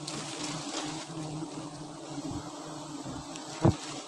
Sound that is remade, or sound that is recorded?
recorded